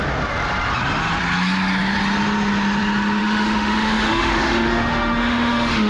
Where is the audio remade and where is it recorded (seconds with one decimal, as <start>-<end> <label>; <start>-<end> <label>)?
0.0-3.2 recorded; 3.2-5.9 remade